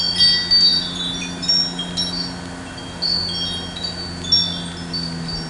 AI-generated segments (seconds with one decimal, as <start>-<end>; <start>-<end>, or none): 0.7-1.5